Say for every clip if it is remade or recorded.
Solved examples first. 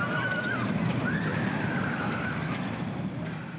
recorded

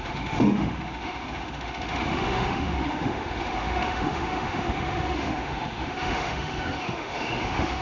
remade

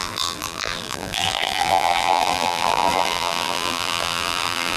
remade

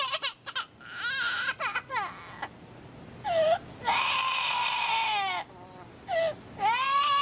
recorded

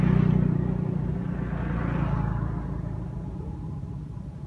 recorded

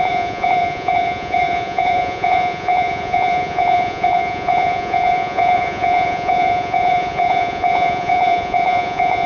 remade